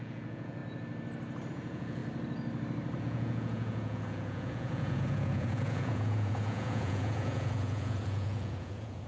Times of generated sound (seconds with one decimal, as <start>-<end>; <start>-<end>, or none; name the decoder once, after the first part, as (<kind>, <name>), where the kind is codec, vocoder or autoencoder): 0.0-0.6 (vocoder, Vocos); 1.5-2.0; 3.0-9.1

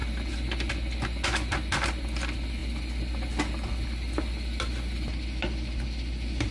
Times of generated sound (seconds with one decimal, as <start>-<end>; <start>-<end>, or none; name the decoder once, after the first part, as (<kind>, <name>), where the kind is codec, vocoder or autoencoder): none

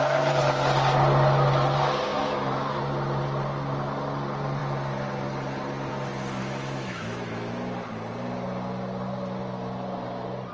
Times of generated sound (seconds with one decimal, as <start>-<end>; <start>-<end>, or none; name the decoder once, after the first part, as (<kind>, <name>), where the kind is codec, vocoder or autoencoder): 2.1-2.8 (autoencoder, DAC-VAE); 6.4-7.5

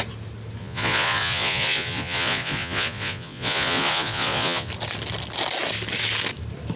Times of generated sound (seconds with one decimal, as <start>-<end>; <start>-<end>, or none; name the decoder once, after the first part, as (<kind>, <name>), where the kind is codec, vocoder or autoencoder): 0.6-4.7 (vocoder, Vocos)

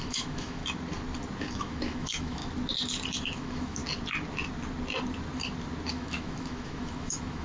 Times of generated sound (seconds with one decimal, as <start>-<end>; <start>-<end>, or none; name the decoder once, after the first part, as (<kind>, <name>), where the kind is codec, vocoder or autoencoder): 0.0-0.6 (autoencoder, DAC-VAE); 1.5-2.4; 3.2-3.8; 5.9-7.4

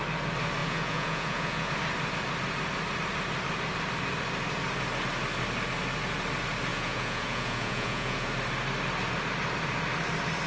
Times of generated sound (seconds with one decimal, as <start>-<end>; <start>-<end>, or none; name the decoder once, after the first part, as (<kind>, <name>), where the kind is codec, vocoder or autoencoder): 0.6-1.7 (vocoder, Vocos); 6.7-8.3

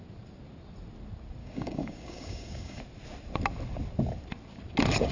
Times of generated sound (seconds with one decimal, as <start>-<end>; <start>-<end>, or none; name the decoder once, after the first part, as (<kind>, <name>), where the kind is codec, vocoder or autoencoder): 1.4-2.8 (codec, DAC)